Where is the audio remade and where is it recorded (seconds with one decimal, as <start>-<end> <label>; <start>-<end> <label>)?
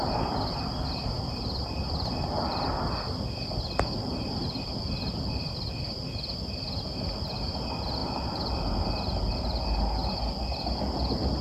0.0-11.4 recorded